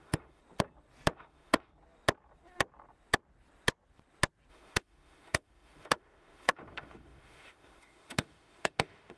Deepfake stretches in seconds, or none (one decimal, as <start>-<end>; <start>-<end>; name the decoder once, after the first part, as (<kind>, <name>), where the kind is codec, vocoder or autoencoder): 0.0-0.4 (autoencoder, DAC-VAE); 1.1-1.7; 4.5-9.2